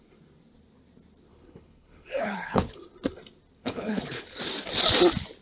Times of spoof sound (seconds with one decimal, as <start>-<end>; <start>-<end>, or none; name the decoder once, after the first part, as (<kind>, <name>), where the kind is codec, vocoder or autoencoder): 1.3-2.8 (codec, HILCodec); 3.6-4.4